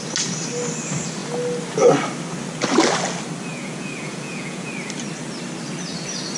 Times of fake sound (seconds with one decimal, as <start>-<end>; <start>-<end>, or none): 3.5-4.7